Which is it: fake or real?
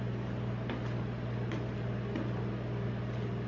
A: real